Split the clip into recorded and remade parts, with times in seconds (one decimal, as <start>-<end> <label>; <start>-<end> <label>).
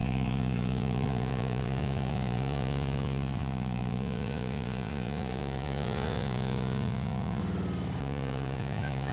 0.0-7.4 remade; 7.4-8.0 recorded; 8.0-9.1 remade